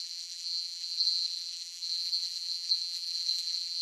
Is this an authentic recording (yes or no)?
no